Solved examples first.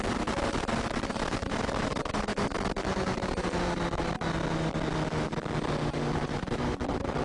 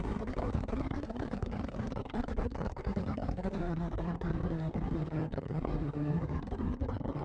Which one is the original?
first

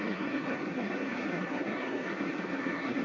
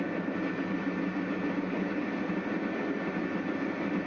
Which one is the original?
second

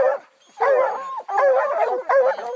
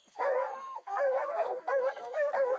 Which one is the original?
first